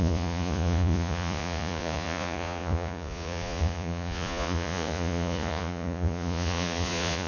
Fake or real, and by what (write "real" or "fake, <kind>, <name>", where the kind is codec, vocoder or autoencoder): fake, vocoder, Vocos